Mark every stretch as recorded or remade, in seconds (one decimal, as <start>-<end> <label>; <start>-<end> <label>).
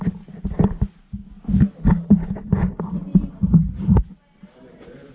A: 0.0-5.1 recorded